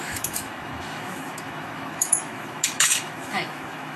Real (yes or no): no